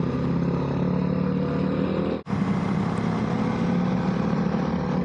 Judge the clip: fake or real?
real